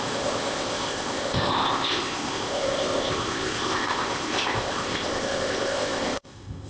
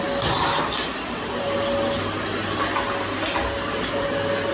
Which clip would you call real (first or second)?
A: second